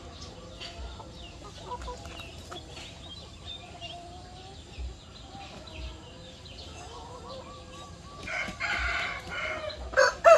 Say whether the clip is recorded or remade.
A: recorded